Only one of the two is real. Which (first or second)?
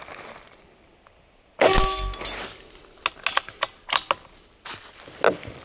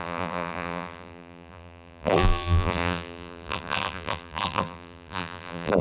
first